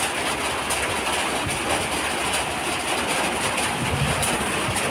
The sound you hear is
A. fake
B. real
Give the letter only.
B